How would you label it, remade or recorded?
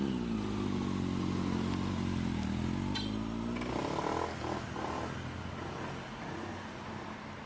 recorded